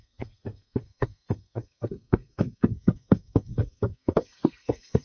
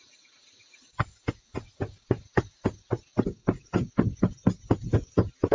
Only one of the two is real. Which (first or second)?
second